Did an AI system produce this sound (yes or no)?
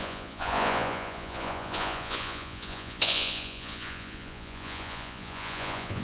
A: yes